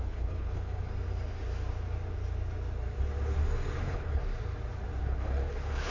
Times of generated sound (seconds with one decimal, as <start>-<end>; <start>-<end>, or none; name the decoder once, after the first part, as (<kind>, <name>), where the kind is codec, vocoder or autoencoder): 0.0-0.9 (codec, HILCodec); 3.8-4.2; 5.0-5.9